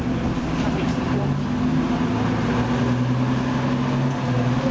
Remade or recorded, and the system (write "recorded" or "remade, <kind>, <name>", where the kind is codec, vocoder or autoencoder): recorded